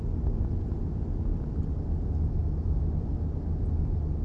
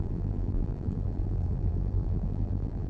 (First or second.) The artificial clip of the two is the second